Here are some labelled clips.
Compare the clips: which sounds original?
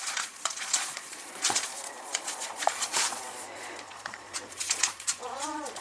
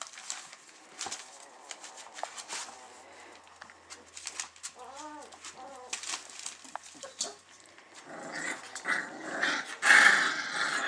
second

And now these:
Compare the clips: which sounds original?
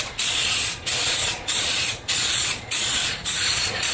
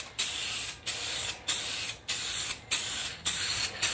second